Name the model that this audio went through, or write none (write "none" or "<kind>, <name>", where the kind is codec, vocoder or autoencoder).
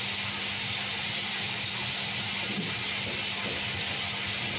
none